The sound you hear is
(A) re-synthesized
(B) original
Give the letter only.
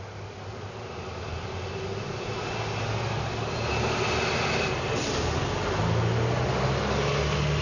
B